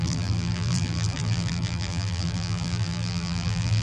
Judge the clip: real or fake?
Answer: fake